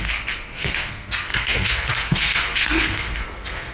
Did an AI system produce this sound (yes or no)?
yes